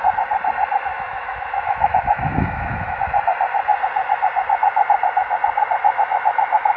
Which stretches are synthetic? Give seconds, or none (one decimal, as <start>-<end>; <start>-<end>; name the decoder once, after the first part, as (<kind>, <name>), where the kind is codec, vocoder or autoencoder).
0.9-3.0 (autoencoder, DAC-VAE)